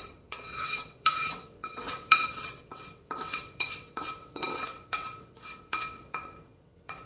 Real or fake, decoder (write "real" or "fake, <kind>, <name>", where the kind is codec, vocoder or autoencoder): fake, vocoder, WaveNeXt